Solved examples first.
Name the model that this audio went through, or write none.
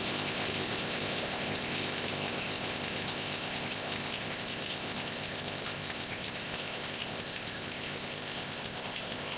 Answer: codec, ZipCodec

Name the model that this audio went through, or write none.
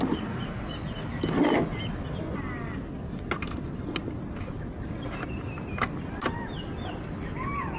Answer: none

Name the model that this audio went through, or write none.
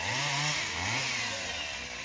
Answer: none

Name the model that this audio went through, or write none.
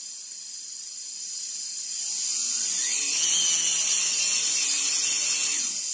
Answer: none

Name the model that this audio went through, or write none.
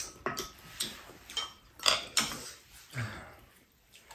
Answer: vocoder, BigVGAN v2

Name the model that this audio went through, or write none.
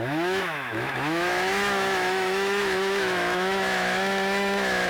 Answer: autoencoder, DAC-VAE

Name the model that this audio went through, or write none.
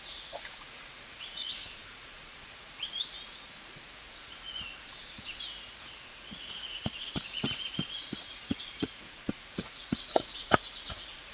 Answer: vocoder, Vocos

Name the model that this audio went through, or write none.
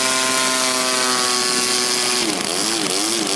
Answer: none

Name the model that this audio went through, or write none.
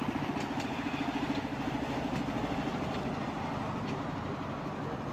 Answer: none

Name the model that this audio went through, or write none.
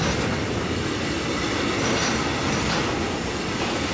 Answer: none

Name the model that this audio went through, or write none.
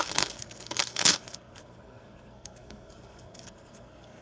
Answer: codec, SNAC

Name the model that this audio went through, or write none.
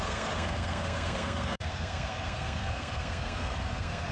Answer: codec, SNAC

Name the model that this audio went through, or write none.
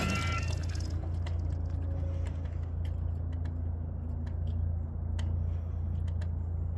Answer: none